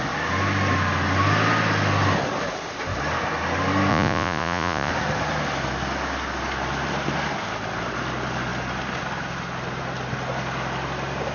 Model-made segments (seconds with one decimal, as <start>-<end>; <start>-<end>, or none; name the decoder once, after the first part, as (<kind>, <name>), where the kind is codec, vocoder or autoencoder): 3.9-4.9 (vocoder, Vocos)